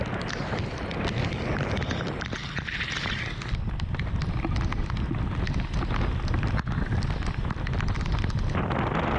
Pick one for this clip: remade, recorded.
recorded